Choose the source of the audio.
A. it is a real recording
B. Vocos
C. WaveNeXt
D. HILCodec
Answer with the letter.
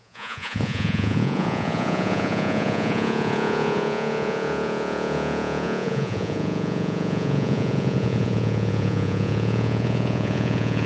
B